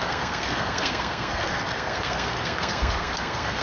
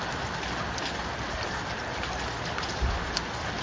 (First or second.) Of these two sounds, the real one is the second